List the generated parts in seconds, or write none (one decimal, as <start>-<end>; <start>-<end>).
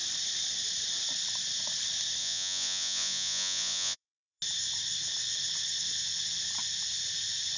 2.2-4.4